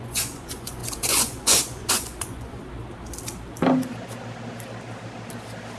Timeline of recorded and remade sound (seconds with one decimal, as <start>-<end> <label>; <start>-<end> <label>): 0.0-2.6 remade; 2.6-5.8 recorded